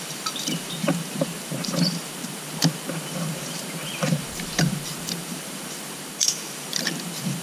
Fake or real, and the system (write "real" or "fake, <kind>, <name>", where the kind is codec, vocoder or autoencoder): fake, vocoder, BigVGAN v2